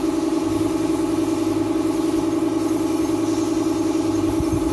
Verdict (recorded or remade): recorded